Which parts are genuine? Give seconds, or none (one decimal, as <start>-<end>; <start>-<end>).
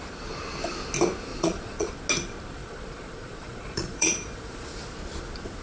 0.0-1.3; 1.9-2.6; 4.8-5.6